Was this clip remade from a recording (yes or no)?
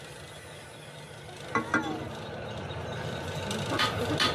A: no